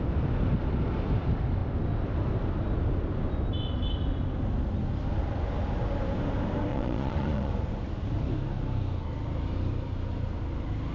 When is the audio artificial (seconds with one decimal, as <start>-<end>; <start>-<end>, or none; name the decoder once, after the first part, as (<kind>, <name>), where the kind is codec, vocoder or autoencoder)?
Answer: 6.7-7.5 (vocoder, Vocos)